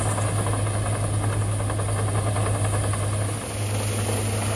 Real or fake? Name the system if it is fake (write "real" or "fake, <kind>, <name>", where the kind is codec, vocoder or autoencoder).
real